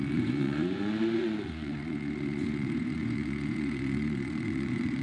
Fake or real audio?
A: fake